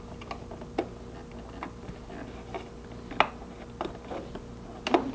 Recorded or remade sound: recorded